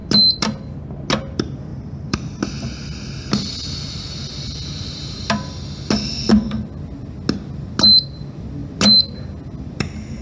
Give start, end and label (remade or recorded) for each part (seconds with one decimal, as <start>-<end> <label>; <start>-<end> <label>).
0.0-1.7 recorded; 1.7-2.4 remade; 2.4-10.2 recorded